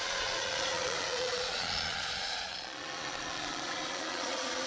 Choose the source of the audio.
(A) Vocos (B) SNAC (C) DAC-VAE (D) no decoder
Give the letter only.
A